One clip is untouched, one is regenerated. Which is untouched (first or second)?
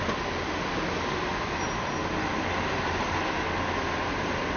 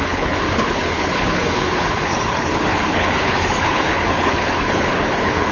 first